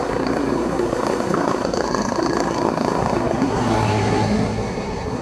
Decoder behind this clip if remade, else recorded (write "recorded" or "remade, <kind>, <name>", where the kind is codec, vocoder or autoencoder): remade, codec, SNAC